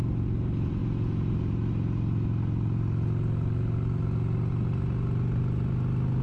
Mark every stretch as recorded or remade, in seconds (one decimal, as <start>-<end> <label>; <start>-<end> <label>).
0.0-6.2 recorded